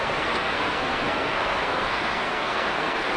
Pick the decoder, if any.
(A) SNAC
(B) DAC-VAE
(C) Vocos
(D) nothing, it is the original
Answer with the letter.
A